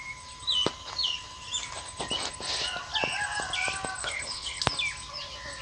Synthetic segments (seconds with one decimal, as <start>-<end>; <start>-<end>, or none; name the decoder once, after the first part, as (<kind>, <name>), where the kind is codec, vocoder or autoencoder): 4.0-4.6 (codec, HILCodec)